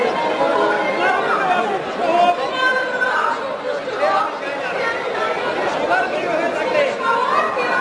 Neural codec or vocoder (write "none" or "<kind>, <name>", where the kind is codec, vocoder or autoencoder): none